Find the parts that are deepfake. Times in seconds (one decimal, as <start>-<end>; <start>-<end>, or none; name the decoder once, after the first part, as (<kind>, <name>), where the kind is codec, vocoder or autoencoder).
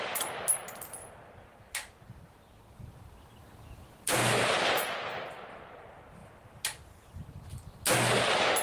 0.0-2.4 (vocoder, BigVGAN v2); 3.4-5.3